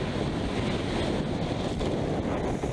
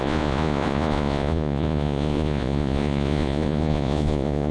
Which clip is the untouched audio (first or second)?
first